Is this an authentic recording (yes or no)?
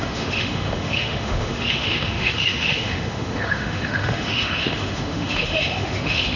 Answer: no